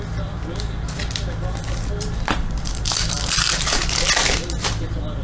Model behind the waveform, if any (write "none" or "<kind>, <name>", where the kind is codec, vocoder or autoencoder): none